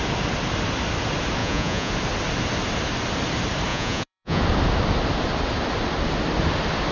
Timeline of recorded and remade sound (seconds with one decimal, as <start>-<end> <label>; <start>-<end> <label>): 0.0-1.4 recorded; 1.4-1.9 remade; 1.9-3.7 recorded; 3.7-4.4 remade; 4.4-6.9 recorded